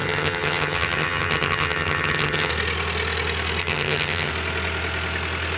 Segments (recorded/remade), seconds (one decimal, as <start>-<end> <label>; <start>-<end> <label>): 0.0-2.5 remade; 2.5-3.6 recorded; 3.6-4.3 remade; 4.3-5.6 recorded